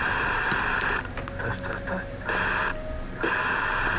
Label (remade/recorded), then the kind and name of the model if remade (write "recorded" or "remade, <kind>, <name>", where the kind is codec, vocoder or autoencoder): recorded